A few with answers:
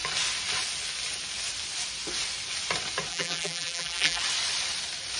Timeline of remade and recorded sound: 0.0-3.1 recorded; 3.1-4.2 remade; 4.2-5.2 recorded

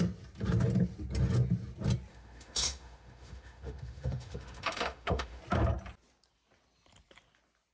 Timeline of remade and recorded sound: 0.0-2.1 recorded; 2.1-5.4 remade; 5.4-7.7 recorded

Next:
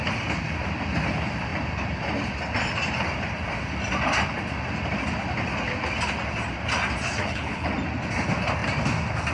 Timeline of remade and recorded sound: 0.0-7.2 recorded; 7.2-7.7 remade; 7.7-9.3 recorded